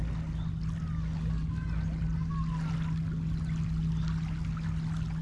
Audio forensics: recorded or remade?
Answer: recorded